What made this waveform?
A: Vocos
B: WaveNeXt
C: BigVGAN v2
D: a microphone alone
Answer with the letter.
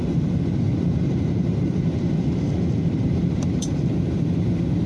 C